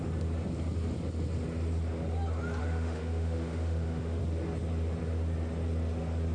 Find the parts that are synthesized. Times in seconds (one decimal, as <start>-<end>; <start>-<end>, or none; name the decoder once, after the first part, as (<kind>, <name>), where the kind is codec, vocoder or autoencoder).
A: 2.6-4.2 (autoencoder, DAC-VAE)